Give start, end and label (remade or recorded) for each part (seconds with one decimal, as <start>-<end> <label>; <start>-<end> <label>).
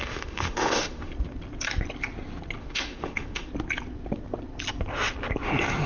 0.0-1.1 remade; 1.1-2.6 recorded; 2.6-3.5 remade; 3.5-5.9 recorded